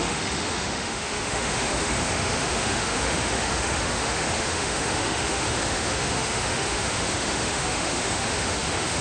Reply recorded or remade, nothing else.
remade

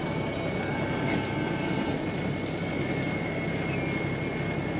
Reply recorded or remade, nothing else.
recorded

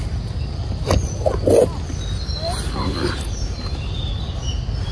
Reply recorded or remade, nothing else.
recorded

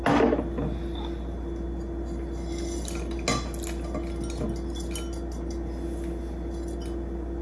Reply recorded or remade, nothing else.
recorded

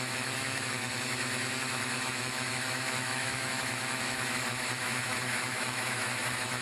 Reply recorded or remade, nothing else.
remade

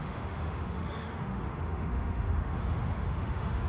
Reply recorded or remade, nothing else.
remade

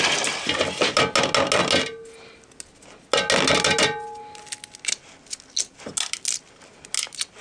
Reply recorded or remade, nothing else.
recorded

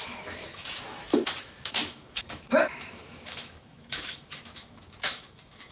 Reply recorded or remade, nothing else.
remade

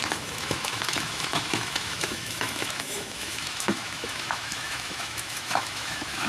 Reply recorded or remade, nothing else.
remade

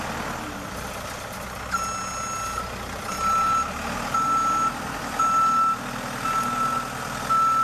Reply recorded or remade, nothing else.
recorded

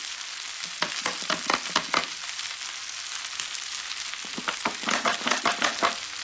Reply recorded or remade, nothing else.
recorded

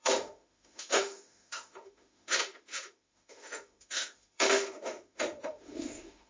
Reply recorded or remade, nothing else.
remade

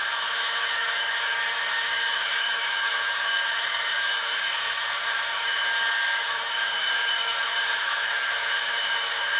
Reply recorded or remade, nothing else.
remade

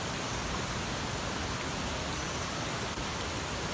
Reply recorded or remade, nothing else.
recorded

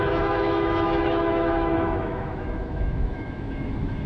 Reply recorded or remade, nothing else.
remade